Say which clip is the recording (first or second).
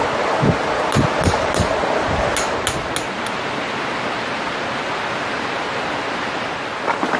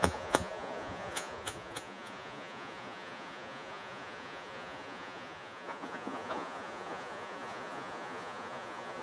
first